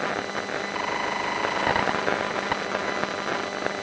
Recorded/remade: recorded